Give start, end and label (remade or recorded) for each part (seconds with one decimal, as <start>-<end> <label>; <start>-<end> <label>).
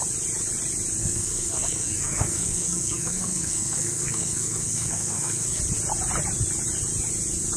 0.0-1.0 recorded; 1.0-5.6 remade; 5.6-7.6 recorded